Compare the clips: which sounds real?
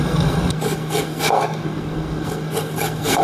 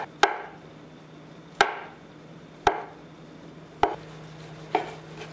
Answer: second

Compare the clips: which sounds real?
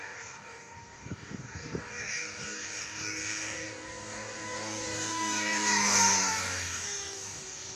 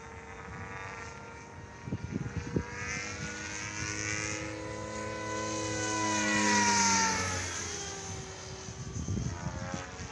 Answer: second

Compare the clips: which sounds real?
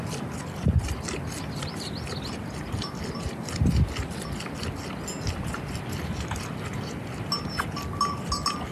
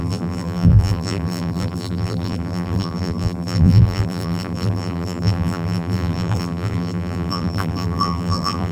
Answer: first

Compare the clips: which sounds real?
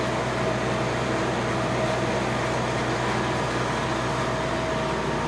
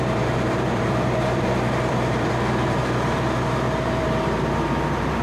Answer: first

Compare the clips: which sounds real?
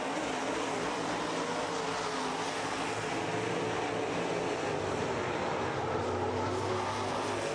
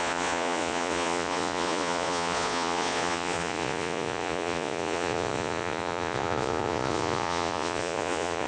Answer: first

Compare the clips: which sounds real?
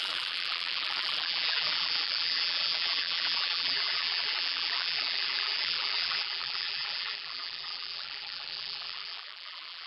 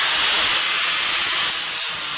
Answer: second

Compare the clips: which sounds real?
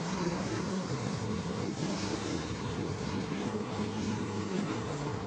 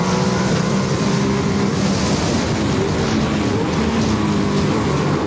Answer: second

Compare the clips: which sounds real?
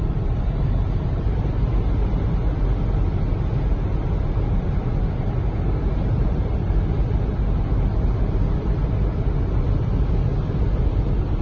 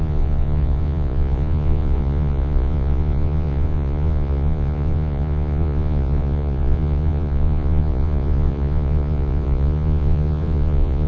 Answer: first